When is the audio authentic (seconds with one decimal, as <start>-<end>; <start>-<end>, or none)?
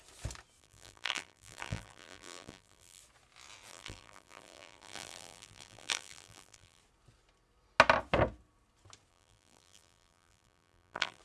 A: 0.0-0.6; 3.0-3.7; 6.8-9.1